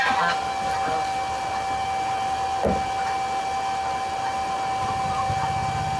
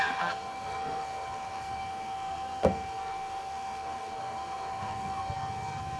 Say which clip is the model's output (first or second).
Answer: second